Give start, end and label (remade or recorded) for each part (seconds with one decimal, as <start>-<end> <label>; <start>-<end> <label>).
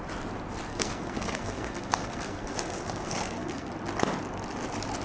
0.0-0.7 recorded; 0.7-3.7 remade; 3.7-5.0 recorded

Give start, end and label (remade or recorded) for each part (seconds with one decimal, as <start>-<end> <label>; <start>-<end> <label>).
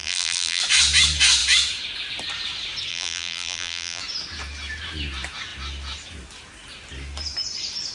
0.0-0.6 remade; 0.6-2.9 recorded; 2.9-4.0 remade; 4.0-7.9 recorded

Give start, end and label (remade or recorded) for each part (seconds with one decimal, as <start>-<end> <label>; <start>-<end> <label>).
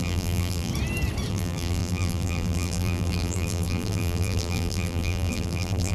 0.0-0.7 remade; 0.7-1.3 recorded; 1.3-5.9 remade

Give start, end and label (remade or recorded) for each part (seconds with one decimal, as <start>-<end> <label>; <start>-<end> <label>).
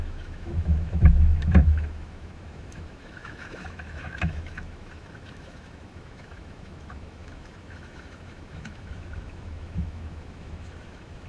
0.0-11.3 remade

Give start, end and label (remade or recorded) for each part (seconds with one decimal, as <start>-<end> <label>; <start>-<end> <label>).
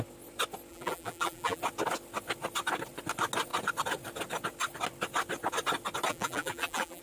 0.0-0.7 recorded; 0.7-1.6 remade; 1.6-6.1 recorded; 6.1-7.0 remade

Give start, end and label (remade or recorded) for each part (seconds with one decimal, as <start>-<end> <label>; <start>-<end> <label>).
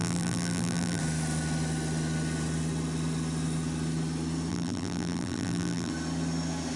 0.0-1.0 remade; 1.0-4.5 recorded; 4.5-5.9 remade; 5.9-6.8 recorded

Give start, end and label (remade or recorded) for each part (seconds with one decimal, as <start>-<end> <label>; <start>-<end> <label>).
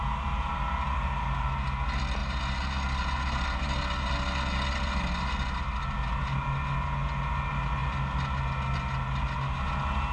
0.0-10.1 recorded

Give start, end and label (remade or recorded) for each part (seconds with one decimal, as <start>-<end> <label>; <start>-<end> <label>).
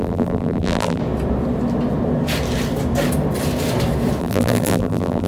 0.0-1.0 remade; 1.0-4.2 recorded; 4.2-5.3 remade